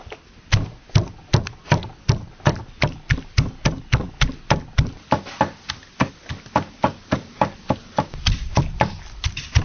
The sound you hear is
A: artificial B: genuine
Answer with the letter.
B